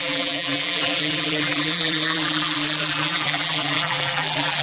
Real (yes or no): no